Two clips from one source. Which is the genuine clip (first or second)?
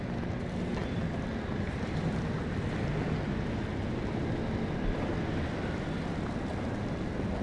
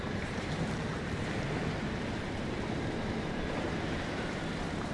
first